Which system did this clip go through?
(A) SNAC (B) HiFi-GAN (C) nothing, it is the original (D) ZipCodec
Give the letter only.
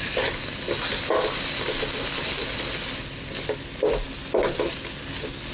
C